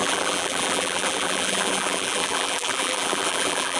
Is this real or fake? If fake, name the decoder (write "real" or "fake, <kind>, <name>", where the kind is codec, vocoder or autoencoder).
fake, vocoder, BigVGAN v2